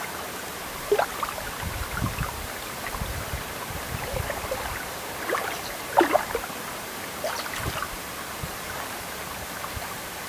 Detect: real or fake real